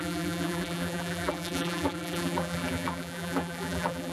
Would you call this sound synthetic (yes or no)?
yes